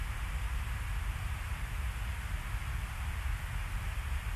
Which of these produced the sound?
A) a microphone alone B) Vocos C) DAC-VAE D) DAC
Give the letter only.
A